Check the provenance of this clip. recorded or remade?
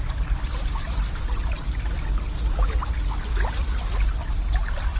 recorded